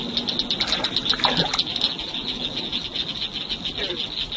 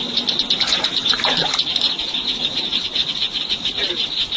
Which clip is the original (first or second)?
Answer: first